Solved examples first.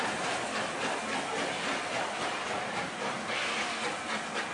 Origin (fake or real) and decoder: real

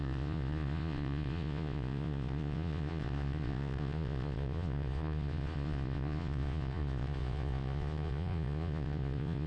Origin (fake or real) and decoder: fake, vocoder, Vocos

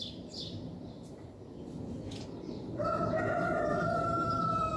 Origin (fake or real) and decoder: fake, vocoder, BigVGAN v2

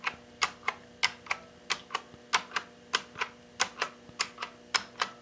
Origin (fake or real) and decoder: real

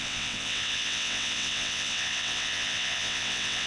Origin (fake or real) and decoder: fake, vocoder, WaveNeXt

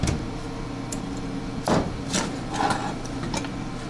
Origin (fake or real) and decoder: fake, vocoder, BigVGAN v2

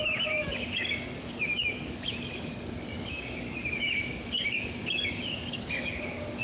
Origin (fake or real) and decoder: fake, codec, DAC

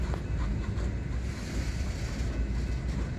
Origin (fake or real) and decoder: real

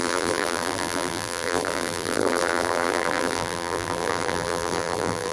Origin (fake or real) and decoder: fake, vocoder, BigVGAN v2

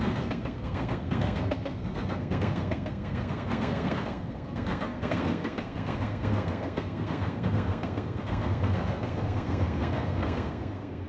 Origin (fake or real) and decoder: fake, codec, SNAC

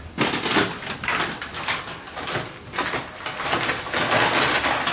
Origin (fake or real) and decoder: real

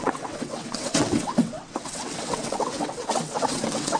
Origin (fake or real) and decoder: fake, vocoder, WaveNeXt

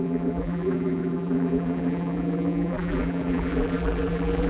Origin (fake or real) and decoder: fake, vocoder, BigVGAN v2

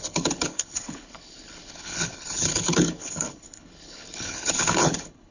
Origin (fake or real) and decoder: fake, codec, HILCodec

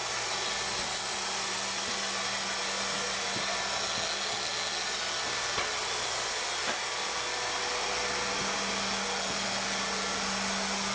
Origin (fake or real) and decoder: real